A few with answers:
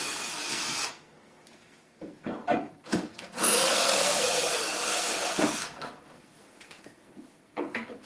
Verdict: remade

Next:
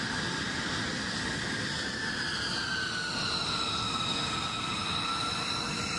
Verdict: recorded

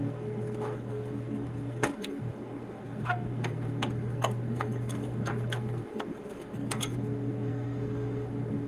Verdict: remade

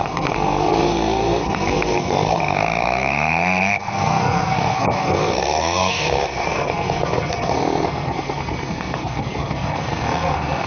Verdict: remade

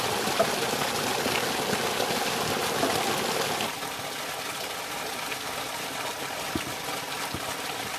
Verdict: recorded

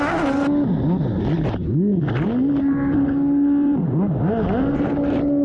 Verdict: recorded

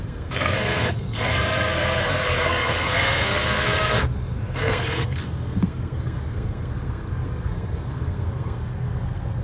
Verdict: remade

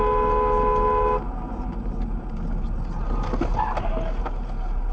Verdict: recorded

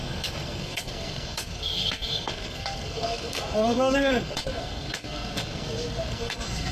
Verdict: remade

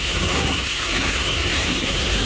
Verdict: remade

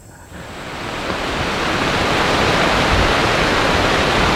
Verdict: recorded